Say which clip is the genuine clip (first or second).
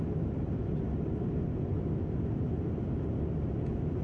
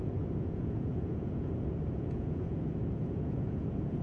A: first